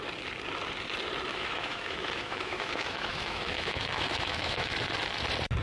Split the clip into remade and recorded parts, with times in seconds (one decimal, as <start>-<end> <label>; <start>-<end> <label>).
0.0-1.3 recorded; 1.3-4.7 remade; 4.7-5.6 recorded